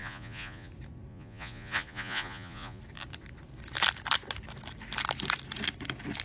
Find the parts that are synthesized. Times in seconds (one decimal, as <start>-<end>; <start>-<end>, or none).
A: 0.0-0.7; 1.1-2.8